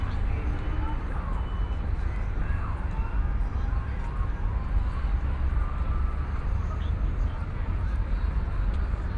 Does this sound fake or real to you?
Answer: real